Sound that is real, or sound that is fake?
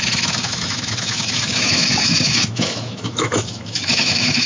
fake